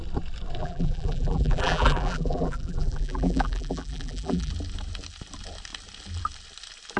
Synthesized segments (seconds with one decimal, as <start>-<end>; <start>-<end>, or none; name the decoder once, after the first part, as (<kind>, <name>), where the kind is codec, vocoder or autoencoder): 0.6-4.5 (vocoder, BigVGAN v2)